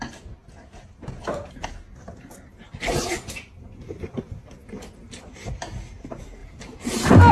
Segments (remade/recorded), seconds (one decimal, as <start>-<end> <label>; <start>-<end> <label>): 0.0-7.3 recorded